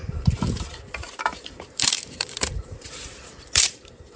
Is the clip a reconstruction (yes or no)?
yes